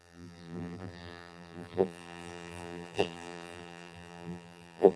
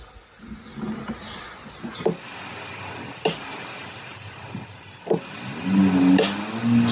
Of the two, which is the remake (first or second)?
first